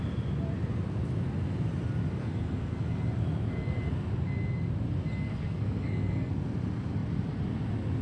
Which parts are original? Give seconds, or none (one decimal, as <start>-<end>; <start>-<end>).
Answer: 0.0-2.2; 2.8-5.3; 6.3-8.0